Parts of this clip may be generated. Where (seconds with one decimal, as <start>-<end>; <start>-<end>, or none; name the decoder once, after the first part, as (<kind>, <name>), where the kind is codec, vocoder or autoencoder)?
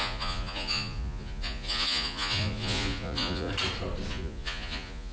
0.0-3.5 (vocoder, Vocos); 4.1-5.1